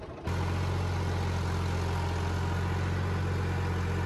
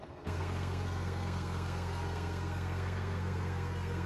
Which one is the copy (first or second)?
second